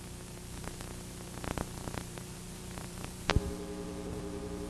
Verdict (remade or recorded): remade